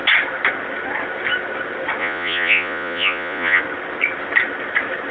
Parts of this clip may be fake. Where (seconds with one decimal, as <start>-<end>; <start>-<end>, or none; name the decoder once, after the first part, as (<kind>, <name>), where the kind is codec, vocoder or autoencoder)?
2.0-3.6 (vocoder, Vocos)